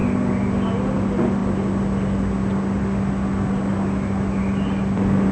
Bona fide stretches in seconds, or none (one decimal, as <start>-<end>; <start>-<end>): 0.0-5.3